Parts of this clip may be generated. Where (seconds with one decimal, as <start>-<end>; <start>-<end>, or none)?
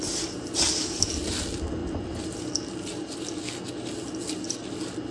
none